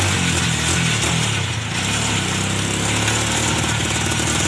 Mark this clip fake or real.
real